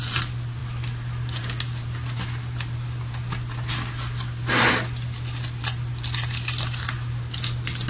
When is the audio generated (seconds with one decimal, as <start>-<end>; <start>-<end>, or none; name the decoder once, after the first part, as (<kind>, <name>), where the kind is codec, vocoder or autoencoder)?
none